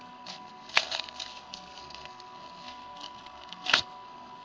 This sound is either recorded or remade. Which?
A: remade